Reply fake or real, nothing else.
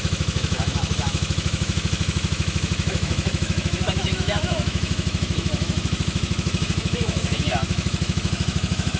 fake